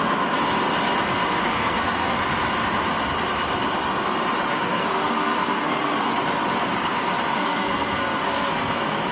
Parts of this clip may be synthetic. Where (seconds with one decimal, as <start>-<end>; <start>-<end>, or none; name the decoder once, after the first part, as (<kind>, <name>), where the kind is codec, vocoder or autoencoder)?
1.4-2.2 (codec, SNAC); 4.5-6.1; 7.3-9.1